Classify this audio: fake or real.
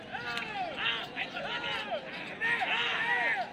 real